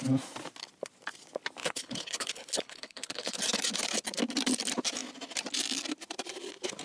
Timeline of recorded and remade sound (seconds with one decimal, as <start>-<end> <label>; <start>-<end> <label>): 0.0-1.6 recorded; 1.6-3.4 remade; 3.4-6.8 recorded